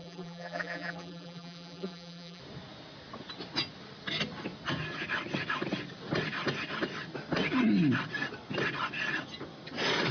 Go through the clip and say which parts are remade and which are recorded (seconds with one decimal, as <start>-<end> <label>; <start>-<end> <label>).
0.0-2.4 remade; 2.4-10.1 recorded